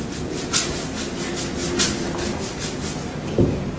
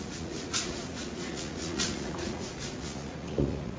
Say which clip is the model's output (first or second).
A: second